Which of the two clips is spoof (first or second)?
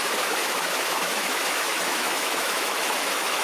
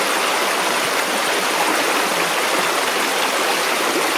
first